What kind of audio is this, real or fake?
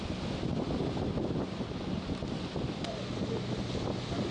real